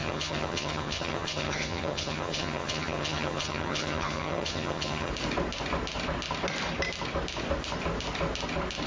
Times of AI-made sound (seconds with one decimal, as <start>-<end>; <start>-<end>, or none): 0.0-5.1